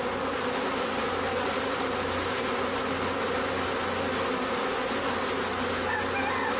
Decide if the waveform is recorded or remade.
recorded